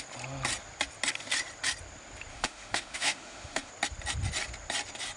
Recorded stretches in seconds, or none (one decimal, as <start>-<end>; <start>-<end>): 0.0-2.3; 3.7-5.2